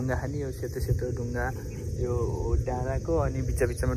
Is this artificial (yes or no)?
no